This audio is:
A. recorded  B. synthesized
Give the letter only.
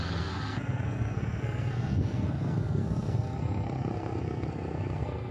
B